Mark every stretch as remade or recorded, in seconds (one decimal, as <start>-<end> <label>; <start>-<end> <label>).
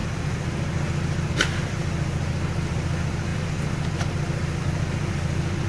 0.0-1.3 recorded; 1.3-1.8 remade; 1.8-2.7 recorded; 2.7-3.3 remade; 3.3-4.6 recorded; 4.6-5.7 remade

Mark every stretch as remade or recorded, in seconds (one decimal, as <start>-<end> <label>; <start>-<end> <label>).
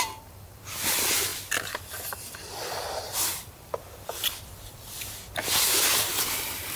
0.0-6.8 recorded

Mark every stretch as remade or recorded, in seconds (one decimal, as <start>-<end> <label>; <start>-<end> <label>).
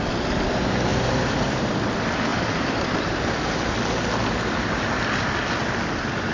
0.0-0.9 recorded; 0.9-1.8 remade; 1.8-2.3 recorded; 2.3-3.2 remade; 3.2-6.3 recorded